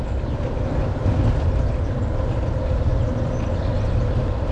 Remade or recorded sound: recorded